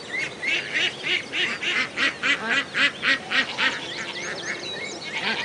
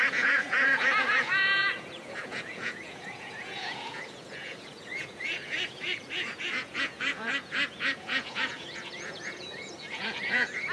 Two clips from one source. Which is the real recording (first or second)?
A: first